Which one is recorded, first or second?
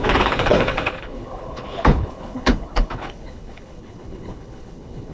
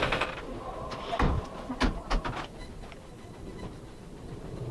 second